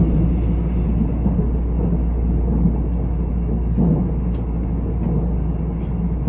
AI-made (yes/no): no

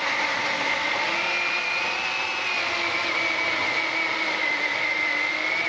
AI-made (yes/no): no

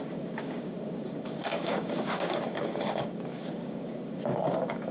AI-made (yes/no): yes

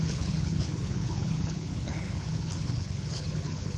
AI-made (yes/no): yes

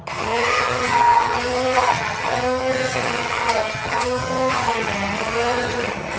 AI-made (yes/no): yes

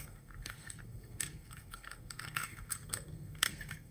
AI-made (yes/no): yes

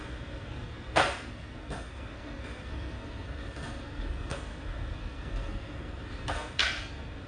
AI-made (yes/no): yes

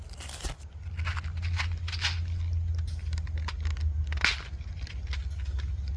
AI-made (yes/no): no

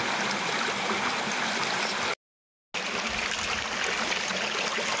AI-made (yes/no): no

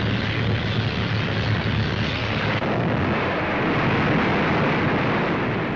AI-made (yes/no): no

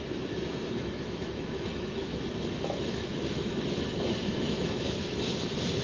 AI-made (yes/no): yes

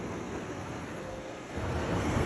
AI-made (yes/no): yes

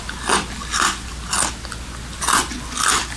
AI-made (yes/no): no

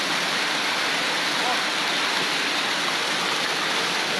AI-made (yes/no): no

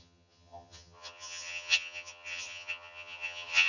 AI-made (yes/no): yes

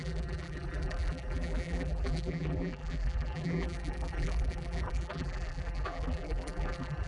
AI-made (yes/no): yes